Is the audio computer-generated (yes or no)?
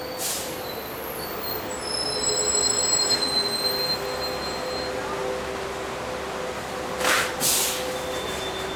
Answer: no